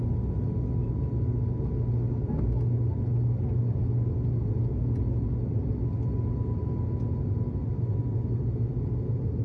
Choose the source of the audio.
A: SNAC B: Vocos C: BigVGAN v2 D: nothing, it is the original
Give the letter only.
D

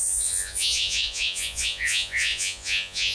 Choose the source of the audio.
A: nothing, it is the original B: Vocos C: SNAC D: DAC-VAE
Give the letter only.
B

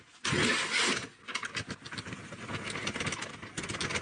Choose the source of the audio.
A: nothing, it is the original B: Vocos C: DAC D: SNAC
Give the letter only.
A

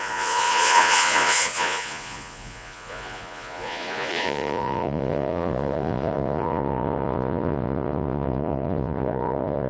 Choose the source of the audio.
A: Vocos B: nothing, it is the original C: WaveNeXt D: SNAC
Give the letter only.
A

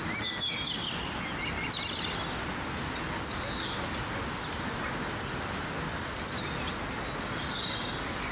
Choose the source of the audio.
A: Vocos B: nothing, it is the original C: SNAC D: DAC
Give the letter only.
B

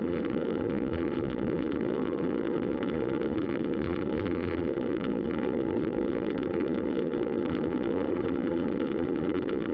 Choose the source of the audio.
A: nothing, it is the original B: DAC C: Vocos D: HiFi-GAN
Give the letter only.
C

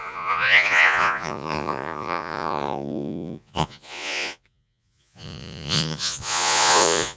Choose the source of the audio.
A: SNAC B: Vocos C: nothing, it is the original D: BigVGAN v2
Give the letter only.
B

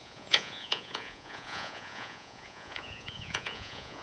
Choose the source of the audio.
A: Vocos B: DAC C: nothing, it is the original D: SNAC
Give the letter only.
A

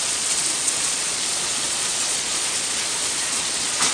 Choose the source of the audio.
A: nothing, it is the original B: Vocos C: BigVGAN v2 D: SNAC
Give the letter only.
B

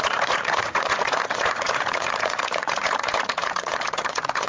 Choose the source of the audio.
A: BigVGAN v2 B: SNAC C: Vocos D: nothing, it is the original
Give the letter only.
C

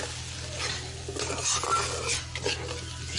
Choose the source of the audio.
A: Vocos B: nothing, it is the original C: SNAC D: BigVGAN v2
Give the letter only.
B